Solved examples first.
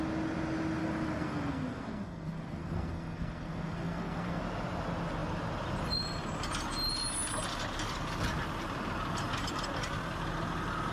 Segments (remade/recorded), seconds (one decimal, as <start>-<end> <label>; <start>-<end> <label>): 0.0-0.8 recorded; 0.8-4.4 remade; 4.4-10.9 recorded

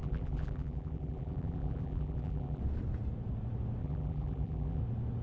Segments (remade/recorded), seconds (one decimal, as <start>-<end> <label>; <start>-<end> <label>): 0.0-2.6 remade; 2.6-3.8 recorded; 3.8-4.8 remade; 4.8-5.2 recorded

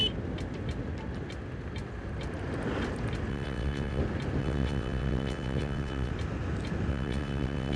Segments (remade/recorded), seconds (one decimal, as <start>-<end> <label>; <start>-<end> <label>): 0.0-3.3 recorded; 3.3-4.0 remade; 4.0-4.4 recorded; 4.4-6.1 remade; 6.1-6.9 recorded; 6.9-7.8 remade